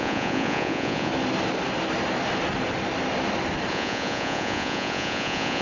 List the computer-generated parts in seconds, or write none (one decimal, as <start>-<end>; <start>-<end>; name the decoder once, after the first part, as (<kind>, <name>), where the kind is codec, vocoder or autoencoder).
0.0-1.1 (vocoder, Vocos); 3.7-5.6